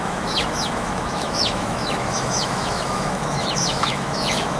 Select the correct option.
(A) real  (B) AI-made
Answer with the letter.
B